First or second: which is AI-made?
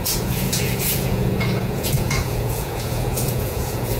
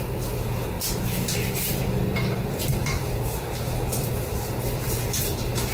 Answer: first